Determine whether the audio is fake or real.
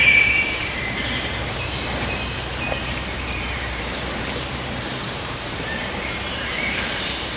fake